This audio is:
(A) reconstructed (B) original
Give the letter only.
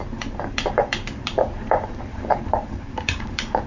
A